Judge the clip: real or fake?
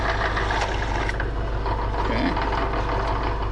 real